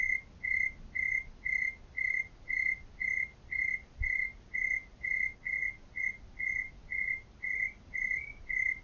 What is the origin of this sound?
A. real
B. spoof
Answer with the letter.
A